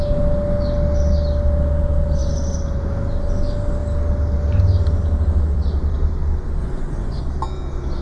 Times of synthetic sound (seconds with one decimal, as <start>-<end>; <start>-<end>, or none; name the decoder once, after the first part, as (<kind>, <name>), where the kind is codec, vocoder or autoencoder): 6.6-7.2 (vocoder, Vocos)